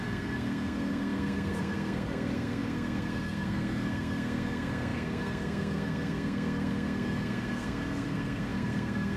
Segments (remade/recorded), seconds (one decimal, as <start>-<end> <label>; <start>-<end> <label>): 0.0-9.2 remade